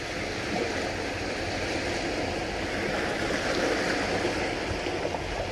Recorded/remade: recorded